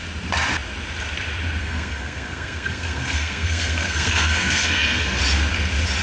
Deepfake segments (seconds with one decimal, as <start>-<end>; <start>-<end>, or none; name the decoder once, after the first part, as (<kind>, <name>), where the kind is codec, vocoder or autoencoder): 1.6-5.2 (codec, SNAC)